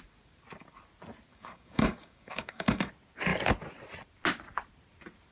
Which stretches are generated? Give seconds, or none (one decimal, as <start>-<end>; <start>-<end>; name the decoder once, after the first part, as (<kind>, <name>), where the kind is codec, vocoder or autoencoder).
1.3-2.9 (codec, DAC)